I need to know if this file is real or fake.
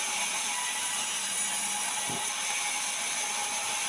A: real